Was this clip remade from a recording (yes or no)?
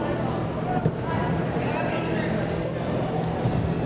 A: no